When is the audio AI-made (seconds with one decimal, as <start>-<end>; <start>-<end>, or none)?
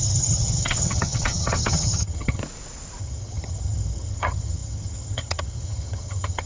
0.0-2.4; 3.0-6.5